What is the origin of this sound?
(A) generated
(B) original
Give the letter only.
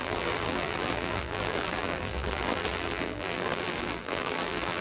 A